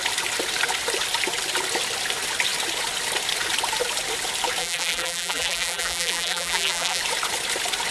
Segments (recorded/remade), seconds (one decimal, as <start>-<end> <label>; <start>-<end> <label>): 0.0-4.6 recorded; 4.6-7.0 remade; 7.0-7.9 recorded